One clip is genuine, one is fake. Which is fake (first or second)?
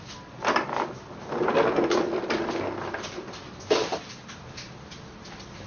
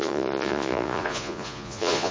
second